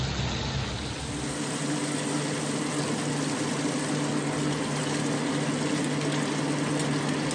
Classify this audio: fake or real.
real